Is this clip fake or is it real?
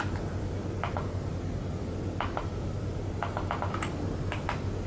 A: real